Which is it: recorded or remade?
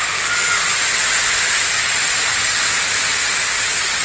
recorded